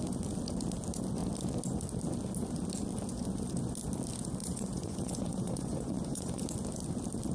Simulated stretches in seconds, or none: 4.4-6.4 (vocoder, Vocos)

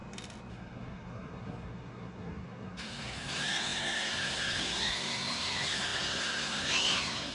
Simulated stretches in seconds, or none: 0.5-7.3 (codec, SNAC)

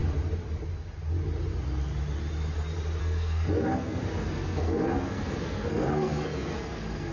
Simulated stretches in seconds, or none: 3.0-7.1 (codec, SNAC)

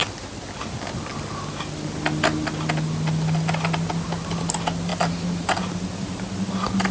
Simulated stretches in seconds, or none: 4.9-6.5 (vocoder, BigVGAN v2)